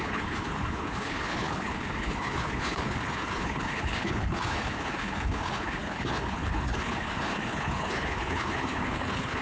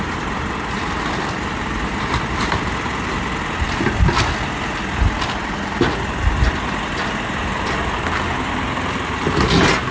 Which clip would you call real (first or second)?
second